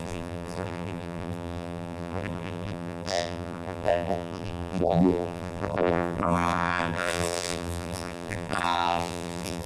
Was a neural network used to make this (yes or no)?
yes